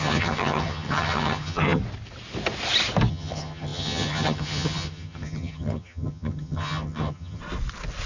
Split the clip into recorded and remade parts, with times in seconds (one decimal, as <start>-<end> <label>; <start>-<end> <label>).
0.0-1.8 remade; 1.8-3.1 recorded; 3.1-7.4 remade; 7.4-8.1 recorded